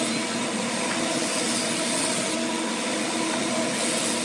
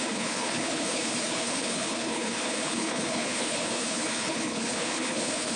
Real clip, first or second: first